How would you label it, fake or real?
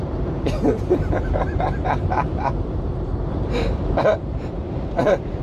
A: fake